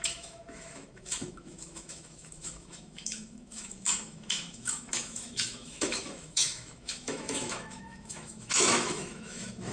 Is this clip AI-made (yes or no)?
yes